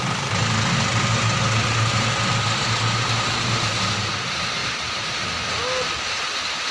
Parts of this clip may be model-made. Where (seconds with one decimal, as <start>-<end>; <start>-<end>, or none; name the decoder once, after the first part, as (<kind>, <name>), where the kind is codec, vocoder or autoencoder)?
none